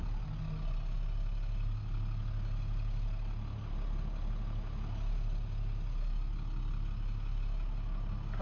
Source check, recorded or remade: recorded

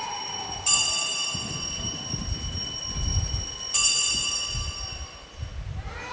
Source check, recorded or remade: recorded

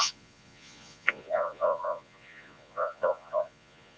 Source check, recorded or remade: remade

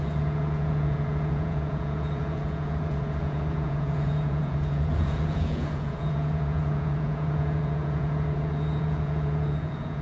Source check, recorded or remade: remade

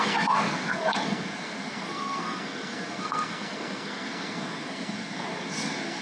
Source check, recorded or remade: remade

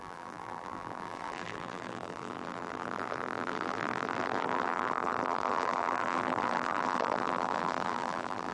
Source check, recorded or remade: remade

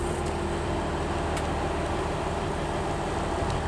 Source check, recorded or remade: recorded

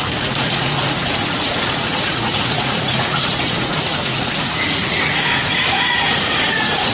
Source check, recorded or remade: remade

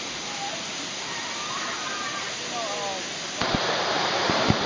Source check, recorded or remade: recorded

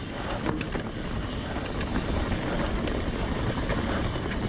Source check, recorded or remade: recorded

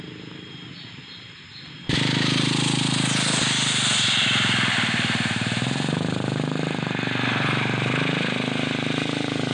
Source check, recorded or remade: recorded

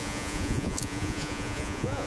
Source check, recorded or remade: remade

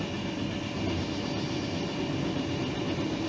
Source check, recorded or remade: recorded